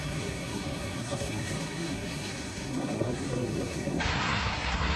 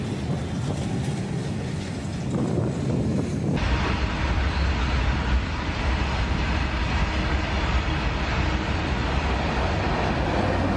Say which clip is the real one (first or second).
second